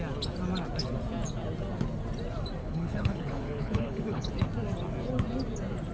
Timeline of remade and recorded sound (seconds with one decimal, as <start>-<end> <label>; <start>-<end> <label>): 0.0-2.6 recorded; 2.6-4.3 remade; 4.3-5.9 recorded

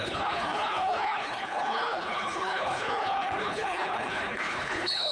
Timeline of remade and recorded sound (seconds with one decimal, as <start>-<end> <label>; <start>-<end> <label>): 0.0-5.1 remade

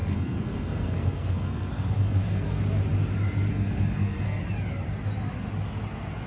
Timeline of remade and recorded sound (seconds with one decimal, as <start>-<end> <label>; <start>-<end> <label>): 0.0-2.6 remade; 2.6-3.5 recorded; 3.5-4.4 remade; 4.4-6.3 recorded

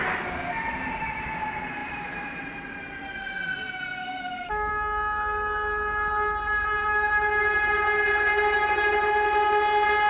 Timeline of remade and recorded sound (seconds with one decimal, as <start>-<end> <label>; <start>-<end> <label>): 0.0-4.0 recorded; 4.0-4.7 remade; 4.7-10.1 recorded

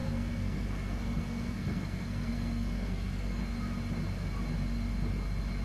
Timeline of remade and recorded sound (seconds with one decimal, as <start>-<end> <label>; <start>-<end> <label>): 0.0-3.4 remade; 3.4-5.6 recorded

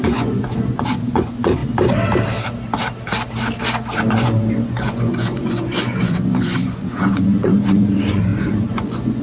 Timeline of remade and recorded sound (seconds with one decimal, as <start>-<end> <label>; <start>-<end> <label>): 0.0-1.6 remade; 1.6-4.1 recorded; 4.1-9.2 remade

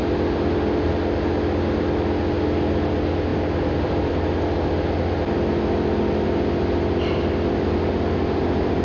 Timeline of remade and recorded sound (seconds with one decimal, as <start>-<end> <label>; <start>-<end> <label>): 0.0-3.3 recorded; 3.3-4.1 remade; 4.1-8.8 recorded